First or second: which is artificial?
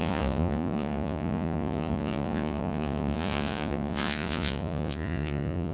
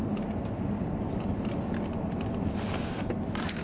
first